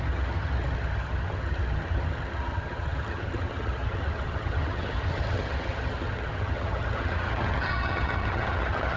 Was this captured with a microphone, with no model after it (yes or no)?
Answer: no